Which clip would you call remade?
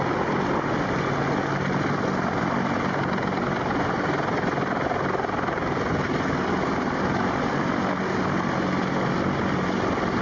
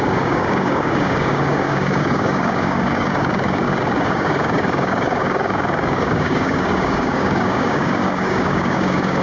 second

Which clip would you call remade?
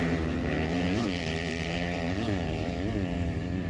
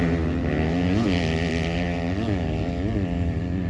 first